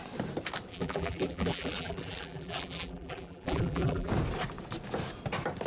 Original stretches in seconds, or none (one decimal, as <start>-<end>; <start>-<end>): 0.0-0.7; 4.1-5.7